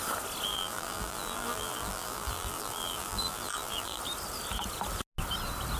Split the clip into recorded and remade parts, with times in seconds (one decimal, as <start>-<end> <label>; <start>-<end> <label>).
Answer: 0.0-0.5 recorded; 0.5-4.0 remade; 4.0-5.8 recorded

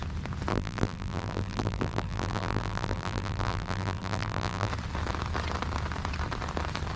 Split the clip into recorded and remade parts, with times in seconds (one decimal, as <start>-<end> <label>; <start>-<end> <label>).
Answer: 0.0-0.5 recorded; 0.5-4.7 remade; 4.7-7.0 recorded

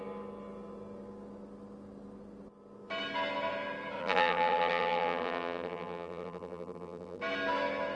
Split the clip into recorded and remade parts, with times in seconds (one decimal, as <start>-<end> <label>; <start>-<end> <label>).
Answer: 0.0-4.0 recorded; 4.0-7.2 remade; 7.2-8.0 recorded

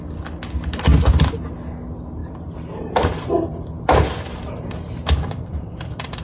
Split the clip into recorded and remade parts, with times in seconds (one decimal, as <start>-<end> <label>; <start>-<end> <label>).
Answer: 0.0-2.2 recorded; 2.2-6.2 remade